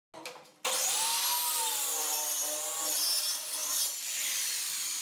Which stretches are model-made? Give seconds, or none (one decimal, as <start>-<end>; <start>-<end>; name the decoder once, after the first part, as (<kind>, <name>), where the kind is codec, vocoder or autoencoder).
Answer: none